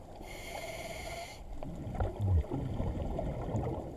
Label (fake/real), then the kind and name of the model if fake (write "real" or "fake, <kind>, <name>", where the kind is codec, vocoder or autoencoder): real